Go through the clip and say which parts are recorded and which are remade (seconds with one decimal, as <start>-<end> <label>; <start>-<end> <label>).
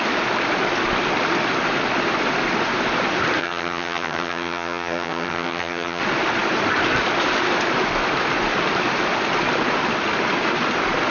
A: 0.0-3.4 recorded; 3.4-6.0 remade; 6.0-11.1 recorded